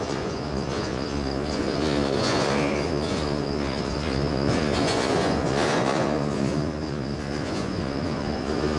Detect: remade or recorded remade